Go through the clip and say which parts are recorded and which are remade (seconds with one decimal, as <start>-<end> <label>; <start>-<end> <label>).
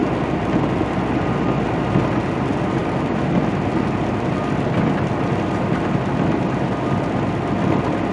0.0-8.1 recorded